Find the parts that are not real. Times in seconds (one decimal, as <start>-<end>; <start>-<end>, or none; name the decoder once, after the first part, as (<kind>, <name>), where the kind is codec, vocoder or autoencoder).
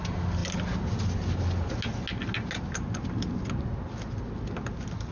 none